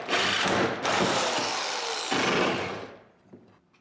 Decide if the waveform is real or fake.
real